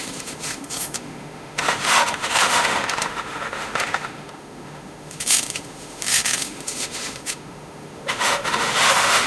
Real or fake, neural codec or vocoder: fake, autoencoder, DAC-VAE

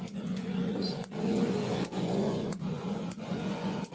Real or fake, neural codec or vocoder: fake, vocoder, Vocos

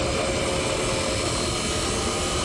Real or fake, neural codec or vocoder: real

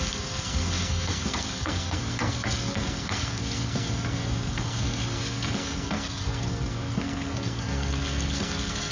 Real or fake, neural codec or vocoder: fake, codec, SNAC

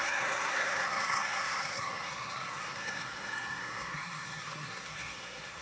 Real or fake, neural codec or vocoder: fake, codec, SNAC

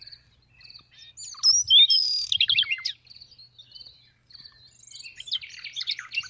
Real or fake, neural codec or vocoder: real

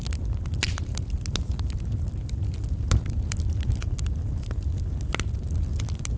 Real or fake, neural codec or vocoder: real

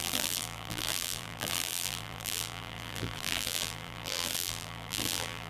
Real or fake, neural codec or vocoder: fake, vocoder, BigVGAN v2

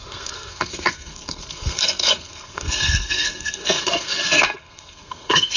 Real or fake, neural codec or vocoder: fake, codec, SNAC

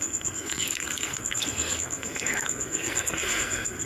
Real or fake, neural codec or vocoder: fake, codec, SNAC